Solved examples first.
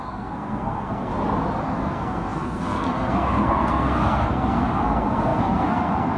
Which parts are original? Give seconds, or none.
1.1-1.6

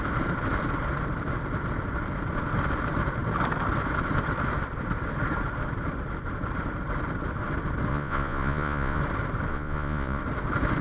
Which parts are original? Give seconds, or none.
0.0-7.9; 9.0-9.5; 10.2-10.8

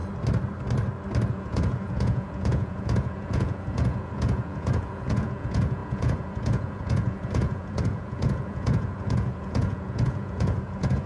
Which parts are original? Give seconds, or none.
0.0-1.3

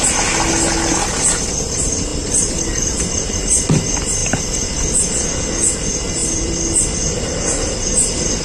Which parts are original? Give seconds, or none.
0.0-2.1; 3.0-4.2; 5.5-6.2; 7.3-8.4